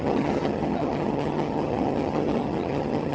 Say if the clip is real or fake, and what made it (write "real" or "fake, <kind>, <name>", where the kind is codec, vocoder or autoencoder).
fake, vocoder, HiFi-GAN